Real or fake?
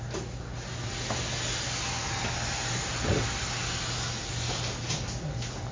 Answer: real